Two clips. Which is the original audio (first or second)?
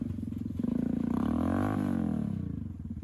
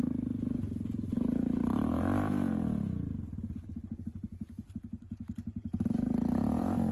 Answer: first